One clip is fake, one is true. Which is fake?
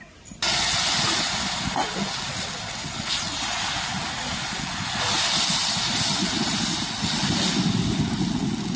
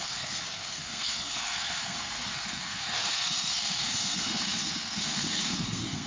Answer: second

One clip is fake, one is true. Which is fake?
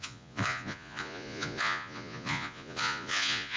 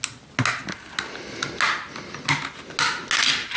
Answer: first